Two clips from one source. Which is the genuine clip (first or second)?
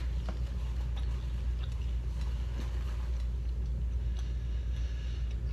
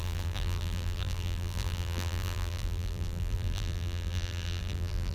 first